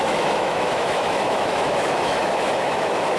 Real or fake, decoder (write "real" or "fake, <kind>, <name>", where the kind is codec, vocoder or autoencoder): fake, autoencoder, DAC-VAE